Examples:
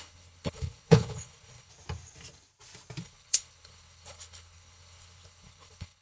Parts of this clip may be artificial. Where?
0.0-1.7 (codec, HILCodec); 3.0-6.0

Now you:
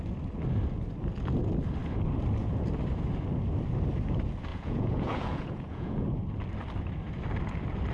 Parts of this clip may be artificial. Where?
4.5-6.2 (vocoder, Vocos)

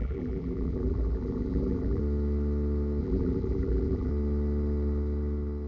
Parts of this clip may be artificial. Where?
0.0-2.0 (vocoder, BigVGAN v2); 3.0-4.1

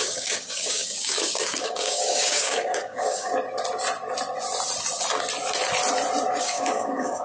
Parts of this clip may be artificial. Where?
0.0-3.3 (codec, DAC); 6.4-7.2

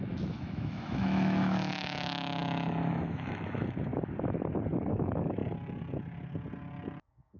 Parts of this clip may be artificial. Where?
0.0-3.9 (autoencoder, DAC-VAE); 4.9-5.4; 7.0-7.4

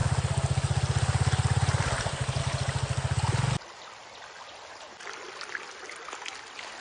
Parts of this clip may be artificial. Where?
none